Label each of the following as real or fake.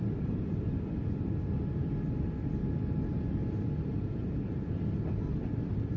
real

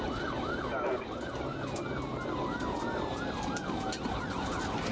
real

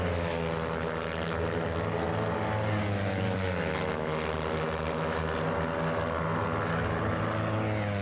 real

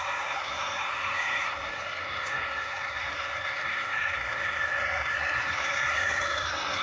fake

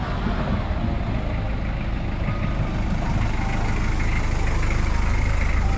real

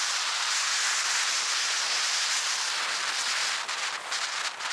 real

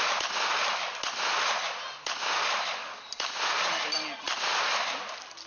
real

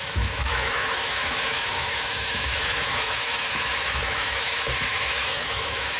fake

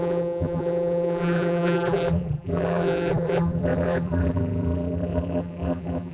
fake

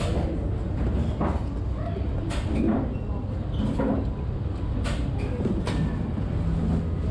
real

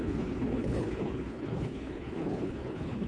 fake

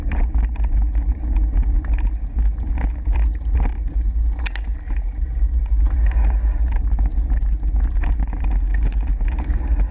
real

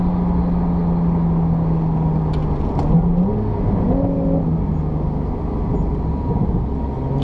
real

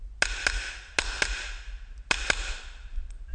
real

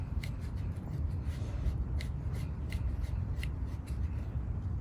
fake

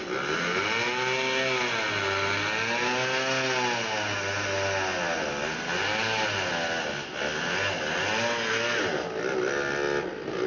real